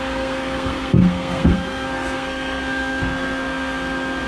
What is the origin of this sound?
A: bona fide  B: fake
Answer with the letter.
B